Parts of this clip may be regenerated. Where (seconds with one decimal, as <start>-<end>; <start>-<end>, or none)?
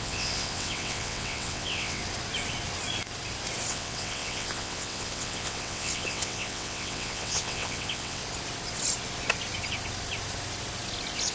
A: 0.0-2.0; 3.7-8.2